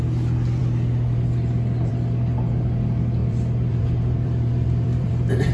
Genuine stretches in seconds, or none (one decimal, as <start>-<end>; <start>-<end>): 0.0-3.2